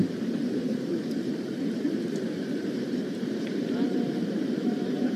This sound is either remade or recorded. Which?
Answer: remade